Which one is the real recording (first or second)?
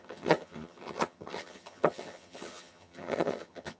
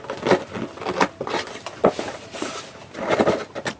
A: second